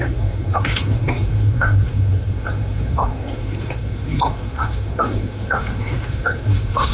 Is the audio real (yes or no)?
no